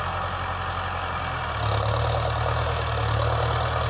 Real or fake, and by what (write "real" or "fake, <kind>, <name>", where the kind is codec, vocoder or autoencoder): real